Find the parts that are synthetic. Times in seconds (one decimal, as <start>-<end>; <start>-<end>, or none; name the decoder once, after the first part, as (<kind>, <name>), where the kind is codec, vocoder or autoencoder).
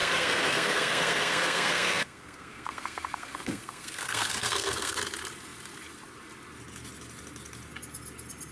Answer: 0.0-5.0 (codec, SNAC)